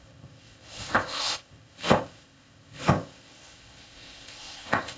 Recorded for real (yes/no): no